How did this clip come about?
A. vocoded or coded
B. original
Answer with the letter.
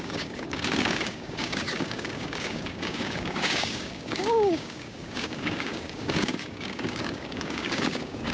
A